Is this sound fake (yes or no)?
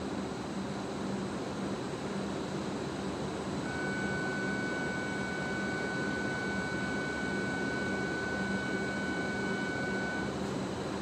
no